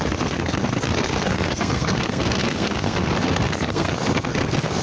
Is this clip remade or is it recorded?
remade